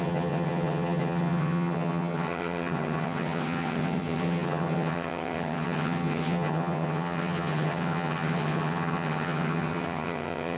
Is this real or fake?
fake